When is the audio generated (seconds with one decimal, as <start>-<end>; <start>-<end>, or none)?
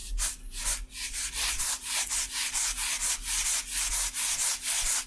none